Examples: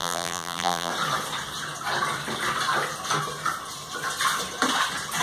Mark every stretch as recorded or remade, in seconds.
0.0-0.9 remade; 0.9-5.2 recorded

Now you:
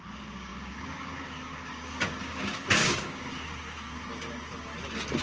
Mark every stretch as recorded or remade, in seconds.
0.0-4.7 remade; 4.7-5.2 recorded